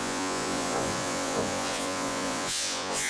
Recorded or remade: remade